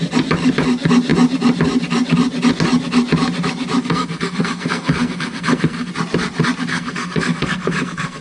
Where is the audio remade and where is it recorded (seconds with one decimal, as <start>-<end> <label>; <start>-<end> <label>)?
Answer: 0.0-3.8 recorded; 3.8-5.9 remade; 5.9-6.7 recorded; 6.7-8.2 remade